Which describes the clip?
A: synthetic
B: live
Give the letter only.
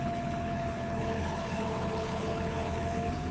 A